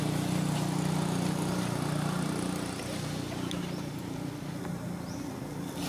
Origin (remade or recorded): recorded